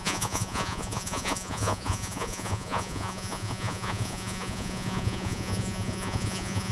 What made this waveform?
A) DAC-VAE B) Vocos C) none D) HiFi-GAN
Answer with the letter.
B